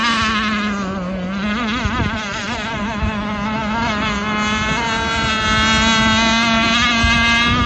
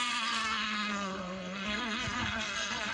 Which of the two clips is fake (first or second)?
second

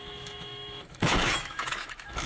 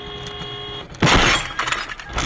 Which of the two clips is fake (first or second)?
first